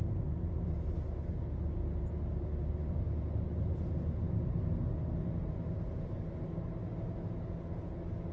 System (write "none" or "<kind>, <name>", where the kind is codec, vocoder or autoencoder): none